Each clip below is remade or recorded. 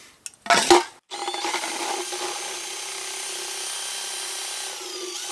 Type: recorded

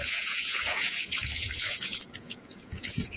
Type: remade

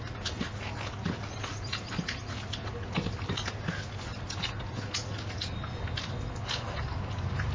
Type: recorded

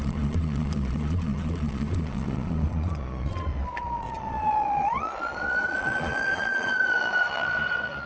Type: remade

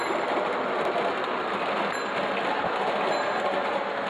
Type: recorded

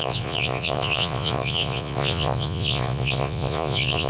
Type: remade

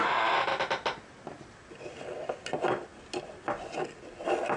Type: recorded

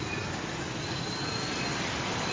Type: recorded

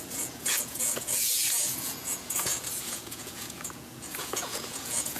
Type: remade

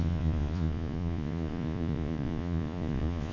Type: remade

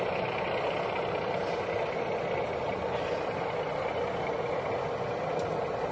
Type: recorded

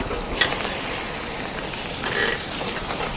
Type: recorded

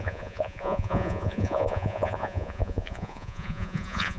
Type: remade